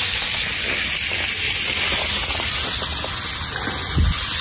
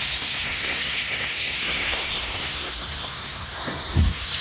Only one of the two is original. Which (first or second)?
first